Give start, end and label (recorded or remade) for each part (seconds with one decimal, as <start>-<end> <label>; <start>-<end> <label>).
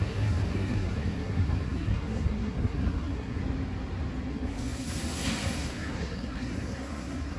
0.0-3.4 remade; 3.4-4.3 recorded; 4.3-7.4 remade